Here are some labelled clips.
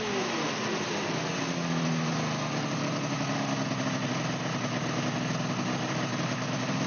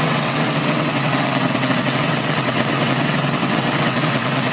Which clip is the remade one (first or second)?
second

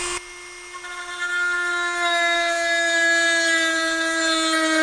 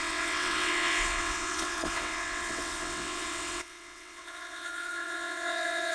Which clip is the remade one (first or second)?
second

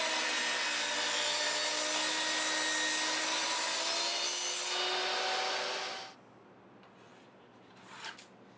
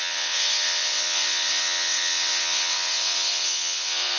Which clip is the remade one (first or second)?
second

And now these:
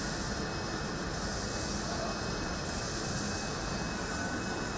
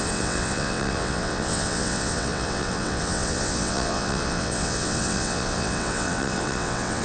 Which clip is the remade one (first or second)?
second